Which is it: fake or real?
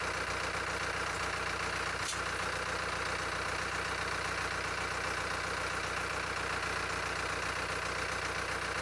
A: real